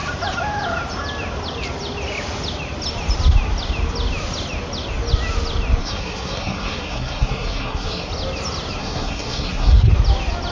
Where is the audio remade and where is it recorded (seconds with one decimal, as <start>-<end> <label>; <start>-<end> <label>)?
0.0-5.8 recorded; 5.8-8.1 remade; 8.1-8.8 recorded; 8.8-9.9 remade; 9.9-10.5 recorded